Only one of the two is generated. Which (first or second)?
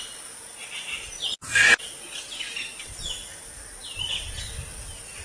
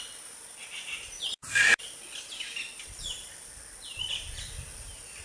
second